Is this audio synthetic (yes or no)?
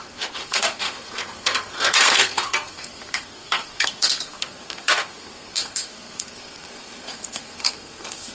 yes